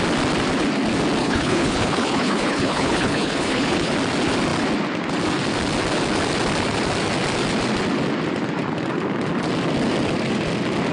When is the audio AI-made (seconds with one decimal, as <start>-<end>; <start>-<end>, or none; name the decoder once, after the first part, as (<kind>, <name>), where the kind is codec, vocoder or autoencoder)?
1.2-3.9 (codec, HILCodec)